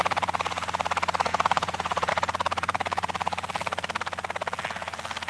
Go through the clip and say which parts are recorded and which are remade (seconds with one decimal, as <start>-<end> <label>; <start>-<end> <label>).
0.0-1.3 recorded; 1.3-2.1 remade; 2.1-5.3 recorded